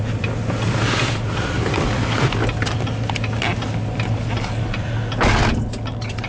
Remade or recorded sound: recorded